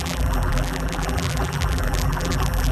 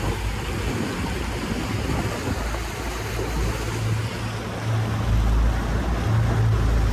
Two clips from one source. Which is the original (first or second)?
second